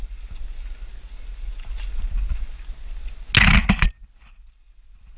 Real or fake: real